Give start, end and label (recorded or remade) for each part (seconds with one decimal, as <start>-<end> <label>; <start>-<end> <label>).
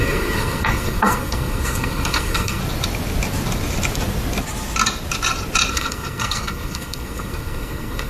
0.0-2.6 remade; 2.6-5.7 recorded; 5.7-8.1 remade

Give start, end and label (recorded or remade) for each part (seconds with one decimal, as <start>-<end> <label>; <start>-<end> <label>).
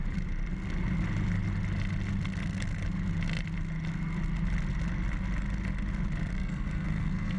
0.0-6.3 recorded; 6.3-7.4 remade